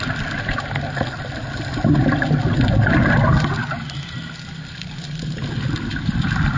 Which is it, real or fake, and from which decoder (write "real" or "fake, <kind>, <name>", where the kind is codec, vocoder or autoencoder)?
real